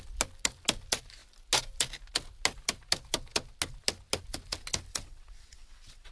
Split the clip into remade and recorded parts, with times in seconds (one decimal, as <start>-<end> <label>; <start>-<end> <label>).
0.0-4.9 recorded; 4.9-6.1 remade